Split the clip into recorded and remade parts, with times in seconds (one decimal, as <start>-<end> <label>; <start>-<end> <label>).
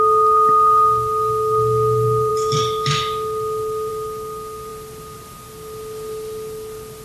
0.0-7.0 recorded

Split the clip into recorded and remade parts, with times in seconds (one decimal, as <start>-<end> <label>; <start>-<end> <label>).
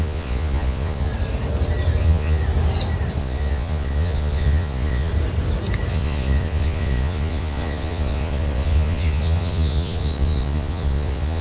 0.0-1.1 remade; 1.1-2.0 recorded; 2.0-2.4 remade; 2.4-3.2 recorded; 3.2-5.1 remade; 5.1-5.9 recorded; 5.9-11.4 remade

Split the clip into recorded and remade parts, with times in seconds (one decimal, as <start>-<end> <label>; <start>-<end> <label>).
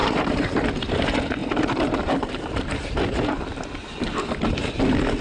0.0-0.7 remade; 0.7-1.4 recorded; 1.4-3.3 remade; 3.3-5.2 recorded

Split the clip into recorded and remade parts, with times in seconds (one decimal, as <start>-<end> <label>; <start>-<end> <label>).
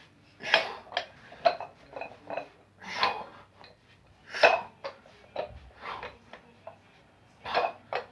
0.0-8.1 recorded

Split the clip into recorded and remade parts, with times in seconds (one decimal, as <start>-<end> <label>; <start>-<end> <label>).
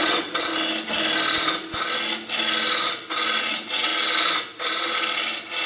0.0-0.5 remade; 0.5-3.4 recorded; 3.4-3.9 remade; 3.9-5.7 recorded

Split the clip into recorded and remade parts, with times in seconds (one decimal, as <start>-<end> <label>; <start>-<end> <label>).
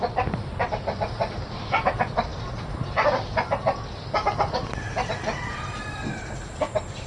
0.0-2.3 remade; 2.3-6.6 recorded; 6.6-7.1 remade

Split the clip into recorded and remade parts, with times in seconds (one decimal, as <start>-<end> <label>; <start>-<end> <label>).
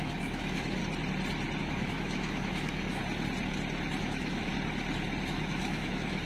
0.0-0.8 remade; 0.8-1.6 recorded; 1.6-3.0 remade; 3.0-4.0 recorded; 4.0-4.5 remade; 4.5-5.3 recorded; 5.3-6.3 remade